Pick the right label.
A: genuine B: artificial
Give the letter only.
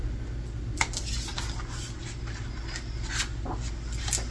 A